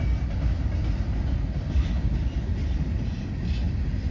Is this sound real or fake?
real